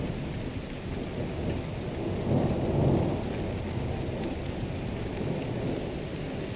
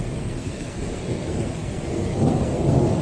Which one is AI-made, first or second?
second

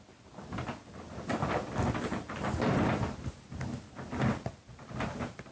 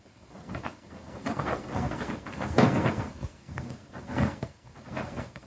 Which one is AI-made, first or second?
second